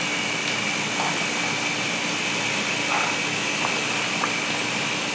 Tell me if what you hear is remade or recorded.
recorded